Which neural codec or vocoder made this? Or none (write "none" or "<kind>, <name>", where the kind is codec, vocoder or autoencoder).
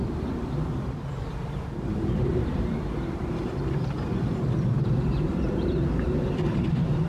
vocoder, BigVGAN v2